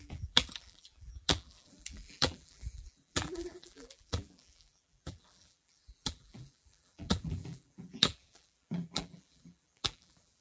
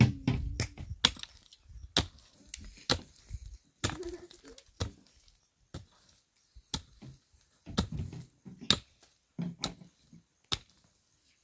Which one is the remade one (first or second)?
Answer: first